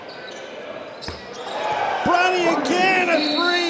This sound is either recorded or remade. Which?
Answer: recorded